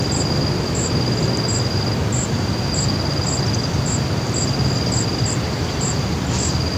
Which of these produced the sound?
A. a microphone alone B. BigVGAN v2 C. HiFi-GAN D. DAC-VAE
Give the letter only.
A